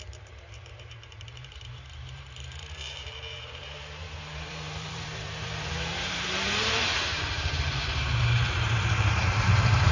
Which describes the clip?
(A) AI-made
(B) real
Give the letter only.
A